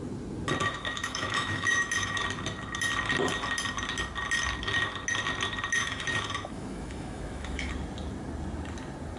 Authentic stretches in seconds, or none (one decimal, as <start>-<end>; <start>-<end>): 0.0-0.6; 2.2-5.8; 7.7-9.2